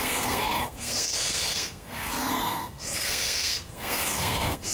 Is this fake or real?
fake